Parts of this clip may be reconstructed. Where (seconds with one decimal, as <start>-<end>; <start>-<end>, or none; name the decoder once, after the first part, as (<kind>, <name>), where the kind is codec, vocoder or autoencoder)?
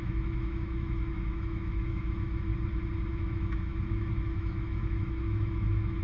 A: 0.0-2.5 (autoencoder, DAC-VAE); 3.1-6.0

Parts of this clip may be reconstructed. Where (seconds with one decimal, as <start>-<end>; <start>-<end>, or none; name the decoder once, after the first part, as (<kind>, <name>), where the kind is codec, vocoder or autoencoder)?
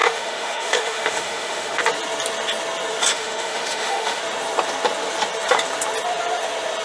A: 0.0-1.8 (autoencoder, DAC-VAE); 3.1-4.2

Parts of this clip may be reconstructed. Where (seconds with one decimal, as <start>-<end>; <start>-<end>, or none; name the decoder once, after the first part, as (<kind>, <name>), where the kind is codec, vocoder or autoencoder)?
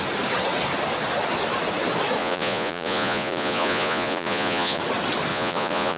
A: 2.2-4.8 (vocoder, Vocos); 5.3-6.0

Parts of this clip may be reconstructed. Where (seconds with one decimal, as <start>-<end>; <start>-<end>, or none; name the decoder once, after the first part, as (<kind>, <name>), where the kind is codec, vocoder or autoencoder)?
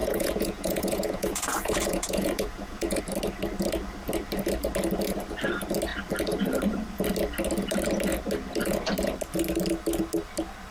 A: 0.0-3.0 (vocoder, Vocos)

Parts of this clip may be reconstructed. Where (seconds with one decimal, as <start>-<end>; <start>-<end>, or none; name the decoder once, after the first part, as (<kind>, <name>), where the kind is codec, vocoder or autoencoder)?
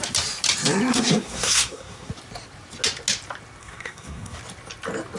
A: 0.9-2.1 (codec, SNAC); 3.6-4.4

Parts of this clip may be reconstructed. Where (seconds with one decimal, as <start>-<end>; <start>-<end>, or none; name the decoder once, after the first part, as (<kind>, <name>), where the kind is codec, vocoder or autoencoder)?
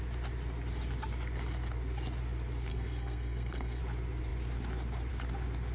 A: 2.7-3.8 (codec, SNAC)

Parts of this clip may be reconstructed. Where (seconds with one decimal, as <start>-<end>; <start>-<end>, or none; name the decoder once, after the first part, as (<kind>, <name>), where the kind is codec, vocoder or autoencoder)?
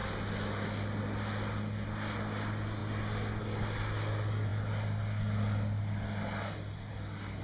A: none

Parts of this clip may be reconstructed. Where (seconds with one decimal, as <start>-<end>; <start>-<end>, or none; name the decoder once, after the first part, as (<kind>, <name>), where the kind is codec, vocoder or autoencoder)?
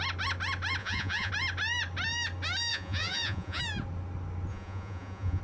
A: 0.8-1.3 (vocoder, Vocos); 2.7-3.6; 4.5-5.4